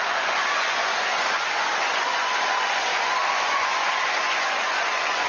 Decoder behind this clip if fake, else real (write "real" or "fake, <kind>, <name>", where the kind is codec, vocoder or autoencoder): fake, vocoder, Vocos